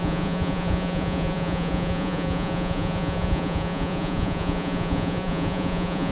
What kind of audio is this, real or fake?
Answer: fake